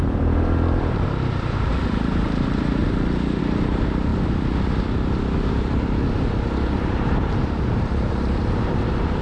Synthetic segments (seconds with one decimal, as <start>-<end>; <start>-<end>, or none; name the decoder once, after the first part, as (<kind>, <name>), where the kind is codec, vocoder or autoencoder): 0.0-2.8 (vocoder, BigVGAN v2); 3.4-4.1; 6.7-9.2